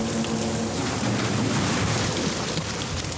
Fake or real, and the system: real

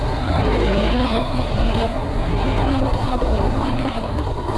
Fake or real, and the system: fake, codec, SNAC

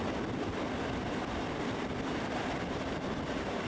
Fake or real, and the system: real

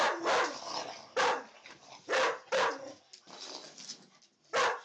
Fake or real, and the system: real